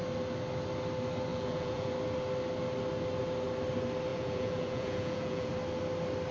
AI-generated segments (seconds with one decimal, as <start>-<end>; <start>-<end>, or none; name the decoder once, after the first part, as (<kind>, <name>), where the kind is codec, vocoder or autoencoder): 1.3-1.9 (vocoder, Vocos); 4.1-5.5